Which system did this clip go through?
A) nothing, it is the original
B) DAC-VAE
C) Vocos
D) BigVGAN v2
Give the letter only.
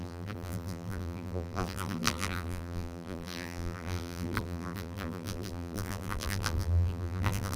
D